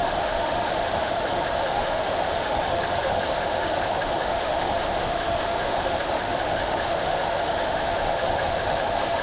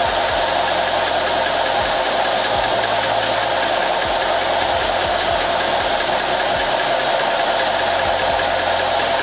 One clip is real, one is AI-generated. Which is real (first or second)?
second